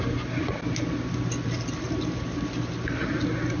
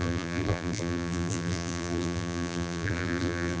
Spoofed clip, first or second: second